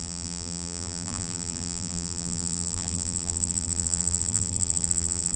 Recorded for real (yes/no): no